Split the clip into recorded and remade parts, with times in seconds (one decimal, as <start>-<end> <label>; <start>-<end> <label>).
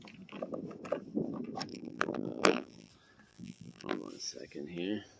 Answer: 0.0-1.7 recorded; 1.7-2.9 remade; 2.9-3.3 recorded; 3.3-4.1 remade; 4.1-5.2 recorded